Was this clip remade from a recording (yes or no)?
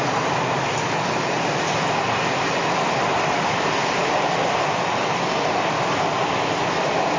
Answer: no